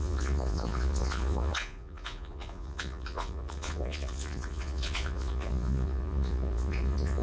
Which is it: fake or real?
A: fake